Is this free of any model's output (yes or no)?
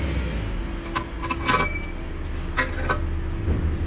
yes